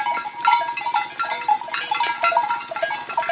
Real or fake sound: real